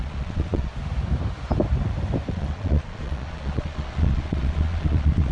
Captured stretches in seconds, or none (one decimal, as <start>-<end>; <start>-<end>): 0.7-2.3